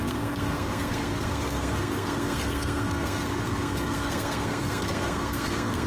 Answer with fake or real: fake